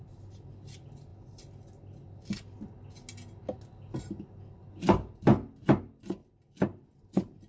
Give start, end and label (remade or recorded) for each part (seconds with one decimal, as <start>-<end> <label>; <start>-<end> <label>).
0.0-7.5 recorded